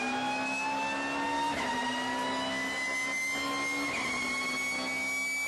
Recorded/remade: recorded